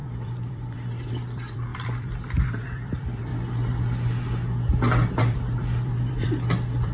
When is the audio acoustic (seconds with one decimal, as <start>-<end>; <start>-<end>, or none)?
3.3-5.2